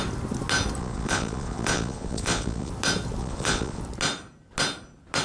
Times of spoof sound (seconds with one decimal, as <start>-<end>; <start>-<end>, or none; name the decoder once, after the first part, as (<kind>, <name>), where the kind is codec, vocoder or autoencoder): 0.8-2.7 (vocoder, Vocos); 3.2-3.8